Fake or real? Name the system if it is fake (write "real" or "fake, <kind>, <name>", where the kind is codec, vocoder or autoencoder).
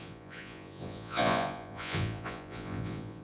fake, vocoder, Vocos